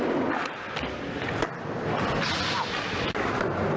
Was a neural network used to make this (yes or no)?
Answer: no